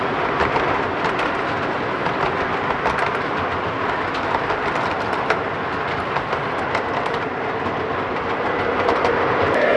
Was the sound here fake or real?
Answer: real